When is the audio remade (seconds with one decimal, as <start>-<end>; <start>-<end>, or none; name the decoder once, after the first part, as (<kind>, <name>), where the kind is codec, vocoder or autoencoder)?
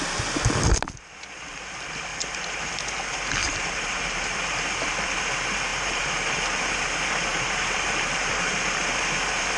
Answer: 2.1-2.7 (vocoder, BigVGAN v2); 3.4-4.4; 5.7-6.4; 7.3-8.8